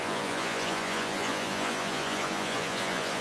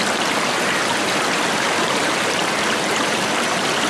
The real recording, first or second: second